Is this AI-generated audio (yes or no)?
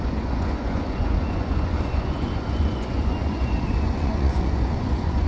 yes